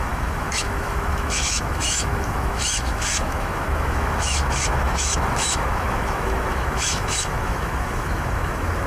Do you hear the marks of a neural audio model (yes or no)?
yes